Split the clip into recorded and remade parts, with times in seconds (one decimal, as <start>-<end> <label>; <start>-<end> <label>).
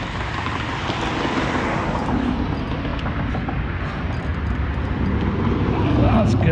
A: 0.0-4.3 recorded; 4.3-4.9 remade; 4.9-6.5 recorded